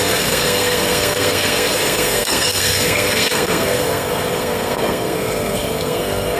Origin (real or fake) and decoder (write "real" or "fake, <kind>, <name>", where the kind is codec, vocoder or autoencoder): fake, codec, SNAC